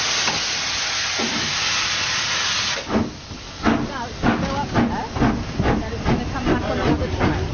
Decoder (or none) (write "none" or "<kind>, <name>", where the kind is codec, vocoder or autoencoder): none